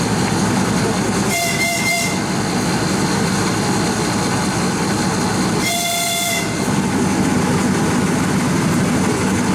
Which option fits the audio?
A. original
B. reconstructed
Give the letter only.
A